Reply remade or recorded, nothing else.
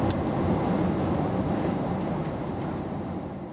recorded